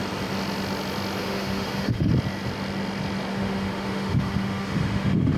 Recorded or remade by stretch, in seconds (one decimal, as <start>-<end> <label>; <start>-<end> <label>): 0.0-1.2 recorded; 1.2-2.1 remade; 2.1-3.3 recorded; 3.3-5.4 remade